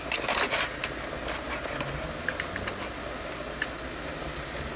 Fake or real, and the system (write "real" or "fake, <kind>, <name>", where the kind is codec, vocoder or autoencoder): real